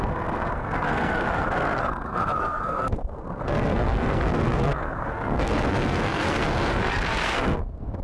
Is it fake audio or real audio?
fake